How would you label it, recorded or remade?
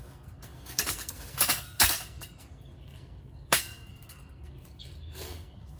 remade